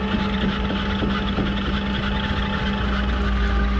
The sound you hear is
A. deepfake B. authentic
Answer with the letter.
B